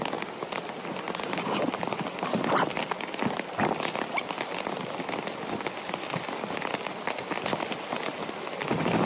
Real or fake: real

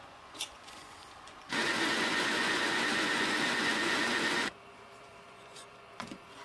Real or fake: fake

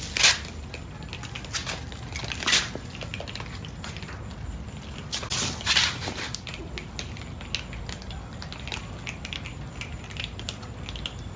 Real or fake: real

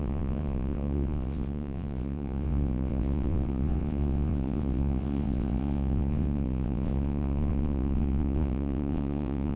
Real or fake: fake